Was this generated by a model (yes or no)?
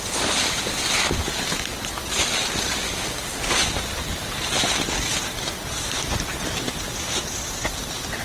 no